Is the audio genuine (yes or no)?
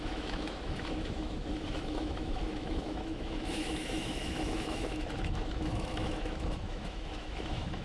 no